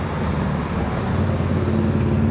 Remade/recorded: recorded